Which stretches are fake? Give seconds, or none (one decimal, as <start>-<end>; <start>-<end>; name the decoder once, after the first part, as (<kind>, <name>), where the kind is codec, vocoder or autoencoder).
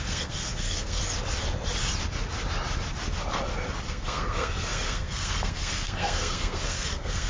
0.0-1.0 (codec, SNAC); 3.9-7.3